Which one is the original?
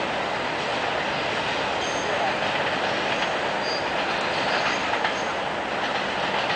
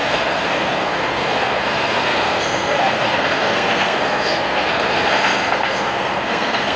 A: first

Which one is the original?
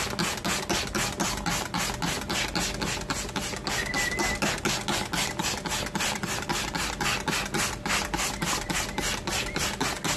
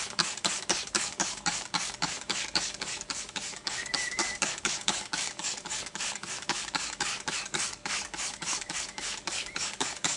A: first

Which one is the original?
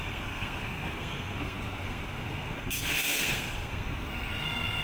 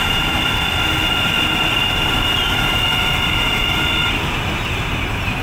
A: second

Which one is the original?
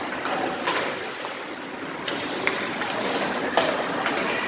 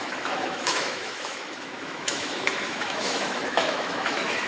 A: first